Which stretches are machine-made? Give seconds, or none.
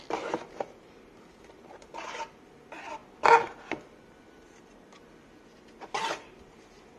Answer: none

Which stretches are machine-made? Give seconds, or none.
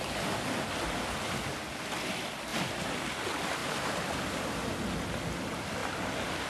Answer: 2.5-3.1 (vocoder, BigVGAN v2); 3.6-4.5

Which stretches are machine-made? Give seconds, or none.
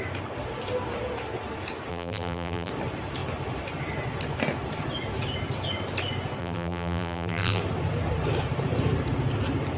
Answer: 1.9-2.7 (vocoder, BigVGAN v2); 6.4-7.6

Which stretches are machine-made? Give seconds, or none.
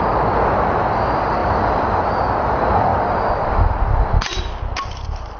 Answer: 1.4-2.0 (vocoder, BigVGAN v2)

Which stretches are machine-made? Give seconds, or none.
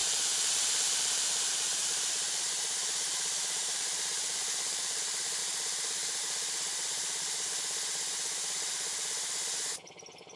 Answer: 0.0-5.0 (vocoder, BigVGAN v2); 5.4-6.2